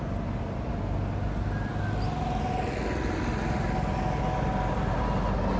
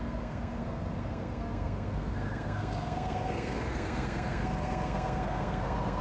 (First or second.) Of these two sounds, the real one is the first